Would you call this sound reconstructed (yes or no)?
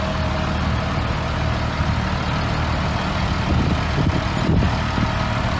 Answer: no